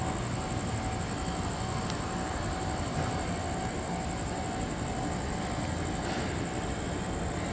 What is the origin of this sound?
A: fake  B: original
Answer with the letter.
B